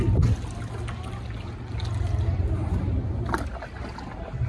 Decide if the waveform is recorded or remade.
recorded